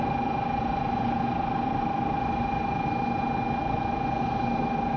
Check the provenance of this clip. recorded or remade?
recorded